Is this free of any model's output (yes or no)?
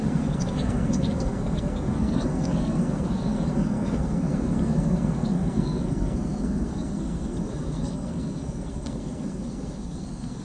no